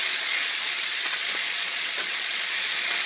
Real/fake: fake